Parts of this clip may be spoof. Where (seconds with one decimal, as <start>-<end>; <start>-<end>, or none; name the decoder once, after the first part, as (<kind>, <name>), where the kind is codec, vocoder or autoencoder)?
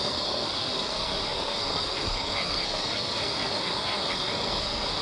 0.0-5.0 (codec, SNAC)